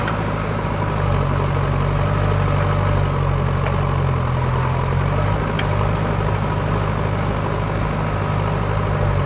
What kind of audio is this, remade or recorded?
recorded